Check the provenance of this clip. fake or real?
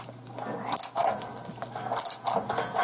real